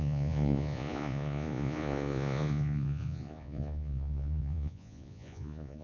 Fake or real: fake